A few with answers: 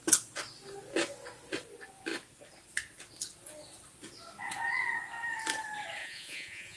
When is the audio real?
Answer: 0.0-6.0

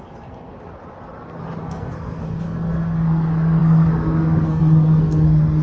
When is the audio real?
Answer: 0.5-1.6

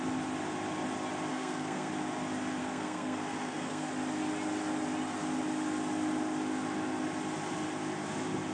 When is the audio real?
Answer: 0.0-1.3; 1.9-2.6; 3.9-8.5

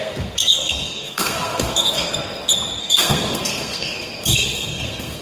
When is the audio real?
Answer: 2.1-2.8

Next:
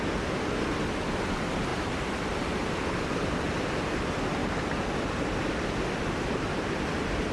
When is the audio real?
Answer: 0.0-7.3